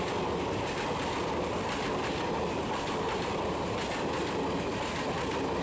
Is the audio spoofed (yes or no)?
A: no